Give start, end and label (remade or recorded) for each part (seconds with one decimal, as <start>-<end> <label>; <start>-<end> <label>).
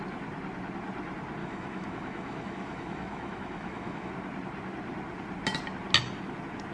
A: 0.0-1.4 recorded; 1.4-4.1 remade; 4.1-6.7 recorded